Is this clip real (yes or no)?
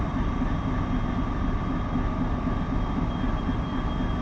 yes